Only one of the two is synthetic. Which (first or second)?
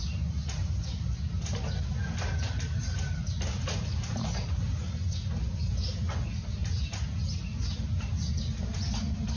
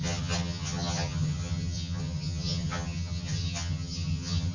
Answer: second